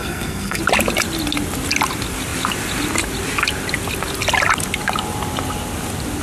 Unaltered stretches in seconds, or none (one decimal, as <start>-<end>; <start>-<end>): 0.6-6.2